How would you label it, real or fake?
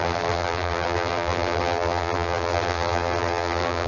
fake